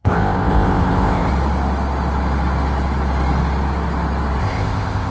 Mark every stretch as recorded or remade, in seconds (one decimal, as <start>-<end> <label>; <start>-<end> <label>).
0.0-1.3 remade; 1.3-4.4 recorded; 4.4-5.1 remade